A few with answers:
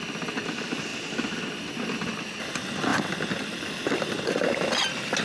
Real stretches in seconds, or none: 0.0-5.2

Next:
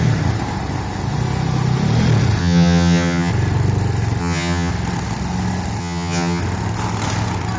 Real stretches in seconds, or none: 0.0-2.4; 3.3-4.2; 4.7-5.8; 6.4-7.6

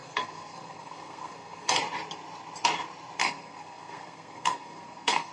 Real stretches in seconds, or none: 1.7-3.2

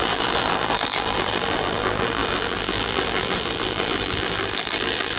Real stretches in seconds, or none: none

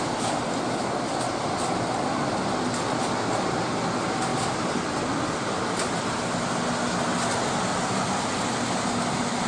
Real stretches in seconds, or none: 0.0-9.5

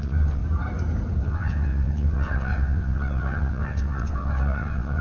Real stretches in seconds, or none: 0.4-1.2

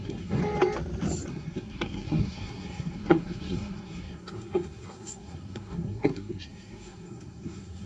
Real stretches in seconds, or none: 0.4-1.3